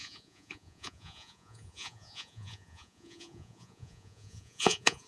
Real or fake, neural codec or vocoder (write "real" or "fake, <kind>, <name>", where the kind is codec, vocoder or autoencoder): fake, vocoder, Vocos